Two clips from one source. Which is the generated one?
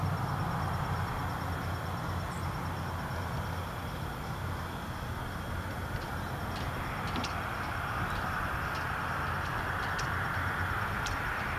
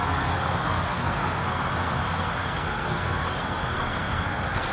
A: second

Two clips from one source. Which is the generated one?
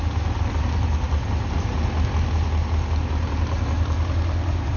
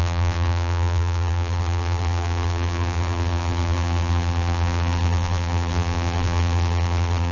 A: second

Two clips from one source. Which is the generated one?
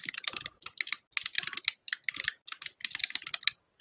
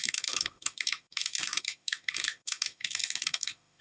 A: second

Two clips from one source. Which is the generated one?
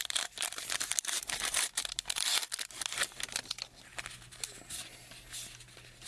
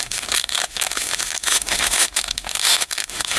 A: second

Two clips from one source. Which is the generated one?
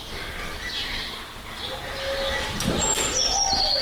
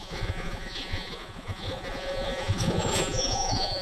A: second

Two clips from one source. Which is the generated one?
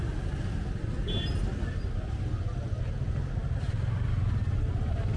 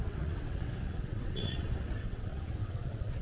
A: second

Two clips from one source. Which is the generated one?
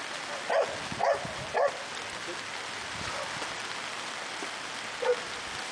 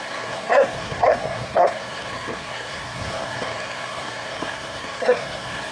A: second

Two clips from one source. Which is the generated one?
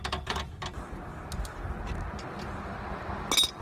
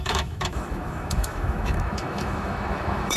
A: second